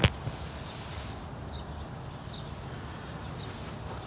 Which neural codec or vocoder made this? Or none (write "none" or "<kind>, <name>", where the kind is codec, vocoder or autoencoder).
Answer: none